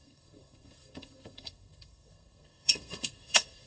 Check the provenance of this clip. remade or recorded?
remade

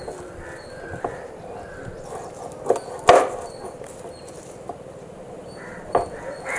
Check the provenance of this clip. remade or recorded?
recorded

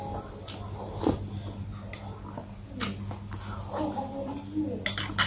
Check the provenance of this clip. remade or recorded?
recorded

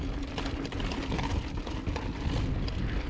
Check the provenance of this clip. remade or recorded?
recorded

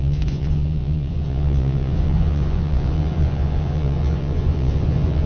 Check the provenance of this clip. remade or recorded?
remade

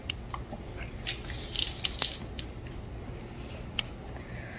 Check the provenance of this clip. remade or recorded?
recorded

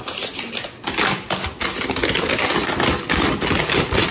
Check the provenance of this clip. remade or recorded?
recorded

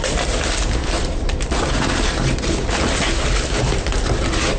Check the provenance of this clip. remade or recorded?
recorded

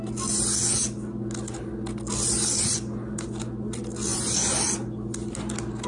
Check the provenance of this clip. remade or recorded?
recorded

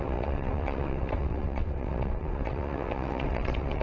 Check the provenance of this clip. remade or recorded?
remade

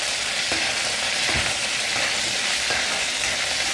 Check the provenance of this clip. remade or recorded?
recorded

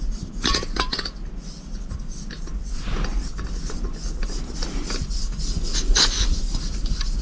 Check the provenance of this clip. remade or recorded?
recorded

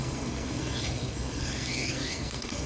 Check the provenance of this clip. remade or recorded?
remade